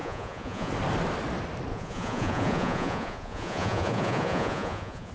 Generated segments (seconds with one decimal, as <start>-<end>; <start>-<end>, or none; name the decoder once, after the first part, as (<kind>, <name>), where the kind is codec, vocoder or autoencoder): 0.0-0.7 (vocoder, Vocos); 1.7-5.1